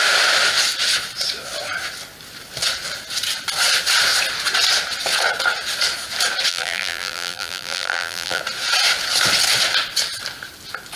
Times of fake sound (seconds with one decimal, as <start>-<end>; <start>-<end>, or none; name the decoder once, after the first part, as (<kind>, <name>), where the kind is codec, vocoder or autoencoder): 6.5-8.4 (vocoder, BigVGAN v2)